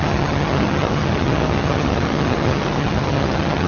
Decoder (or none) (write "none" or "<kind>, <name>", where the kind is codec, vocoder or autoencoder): vocoder, HiFi-GAN